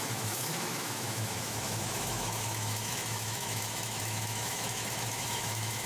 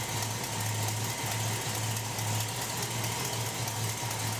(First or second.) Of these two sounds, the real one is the second